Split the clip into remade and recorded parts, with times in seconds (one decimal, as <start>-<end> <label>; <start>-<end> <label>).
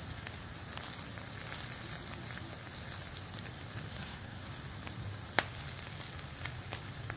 0.0-3.9 recorded; 3.9-4.5 remade; 4.5-7.2 recorded